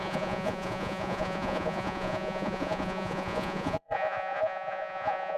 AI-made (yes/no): yes